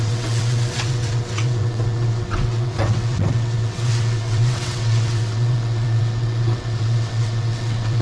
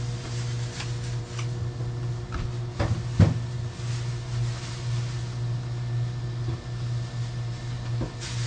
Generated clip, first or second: first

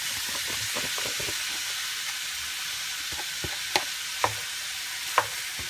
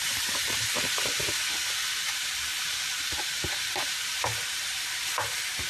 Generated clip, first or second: second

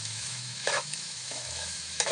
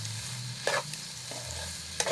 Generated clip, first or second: first